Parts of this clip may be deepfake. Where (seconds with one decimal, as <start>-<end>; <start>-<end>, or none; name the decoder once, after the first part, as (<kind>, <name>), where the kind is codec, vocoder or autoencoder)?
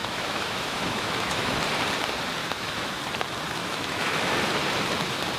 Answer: 0.0-1.6 (autoencoder, DAC-VAE); 2.4-3.0; 3.6-4.3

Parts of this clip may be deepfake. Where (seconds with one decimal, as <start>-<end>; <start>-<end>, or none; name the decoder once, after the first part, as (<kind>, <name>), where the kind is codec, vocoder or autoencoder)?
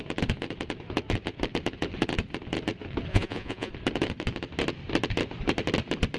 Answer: 3.1-3.7 (vocoder, Vocos)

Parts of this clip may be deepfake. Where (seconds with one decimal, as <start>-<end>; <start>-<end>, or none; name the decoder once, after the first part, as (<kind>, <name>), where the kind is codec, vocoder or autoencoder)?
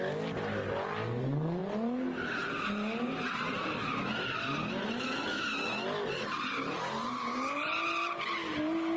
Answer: none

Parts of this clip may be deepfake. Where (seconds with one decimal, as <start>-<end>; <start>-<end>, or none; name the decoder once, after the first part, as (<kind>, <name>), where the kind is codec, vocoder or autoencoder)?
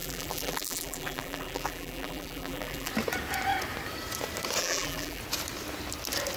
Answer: 0.0-2.9 (vocoder, BigVGAN v2); 4.6-5.2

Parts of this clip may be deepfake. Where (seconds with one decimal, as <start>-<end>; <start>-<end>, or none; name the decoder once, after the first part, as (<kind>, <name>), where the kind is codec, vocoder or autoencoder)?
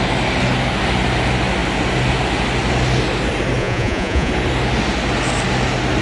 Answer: 3.6-4.3 (vocoder, Vocos)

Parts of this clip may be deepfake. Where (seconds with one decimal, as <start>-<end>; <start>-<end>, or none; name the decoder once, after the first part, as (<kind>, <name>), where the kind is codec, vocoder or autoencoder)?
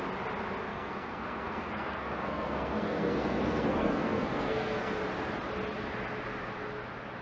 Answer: 0.7-5.0 (codec, SNAC)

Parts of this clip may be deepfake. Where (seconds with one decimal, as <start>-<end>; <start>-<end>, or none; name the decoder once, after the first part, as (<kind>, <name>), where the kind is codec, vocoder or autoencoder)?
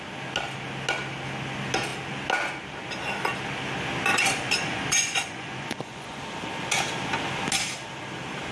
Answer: 4.1-6.2 (vocoder, Vocos)